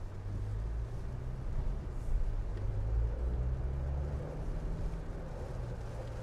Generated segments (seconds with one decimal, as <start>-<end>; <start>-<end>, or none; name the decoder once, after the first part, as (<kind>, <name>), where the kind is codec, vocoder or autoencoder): none